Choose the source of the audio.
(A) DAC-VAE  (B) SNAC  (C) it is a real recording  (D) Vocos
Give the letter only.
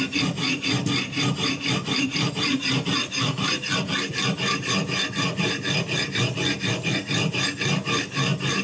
C